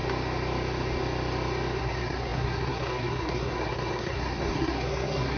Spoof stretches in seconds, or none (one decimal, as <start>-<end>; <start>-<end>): 1.8-5.4